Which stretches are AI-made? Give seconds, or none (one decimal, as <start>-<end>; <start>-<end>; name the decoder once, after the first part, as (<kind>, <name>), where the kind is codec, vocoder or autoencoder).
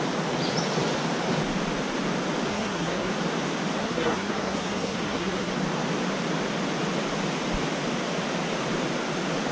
2.5-3.1 (codec, SNAC); 3.8-5.5